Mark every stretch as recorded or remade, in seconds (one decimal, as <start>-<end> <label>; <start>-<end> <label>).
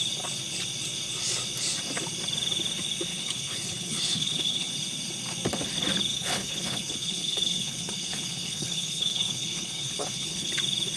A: 0.0-3.1 recorded; 3.1-4.7 remade; 4.7-6.1 recorded; 6.1-10.5 remade; 10.5-11.0 recorded